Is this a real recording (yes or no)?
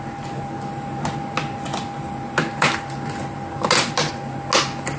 yes